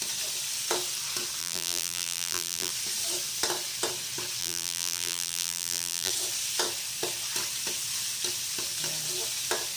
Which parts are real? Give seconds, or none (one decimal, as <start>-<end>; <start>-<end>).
0.0-1.4; 2.7-4.4; 6.1-9.8